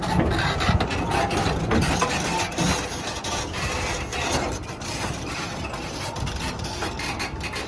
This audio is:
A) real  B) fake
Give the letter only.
A